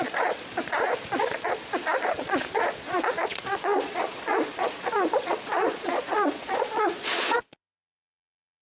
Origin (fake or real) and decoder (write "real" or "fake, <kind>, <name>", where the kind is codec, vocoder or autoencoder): fake, vocoder, Vocos